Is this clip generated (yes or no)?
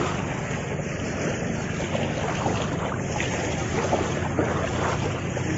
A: no